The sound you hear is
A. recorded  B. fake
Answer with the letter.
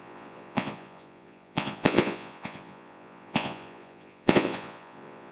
B